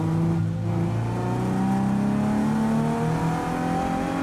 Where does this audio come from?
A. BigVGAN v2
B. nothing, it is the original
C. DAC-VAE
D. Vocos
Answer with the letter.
B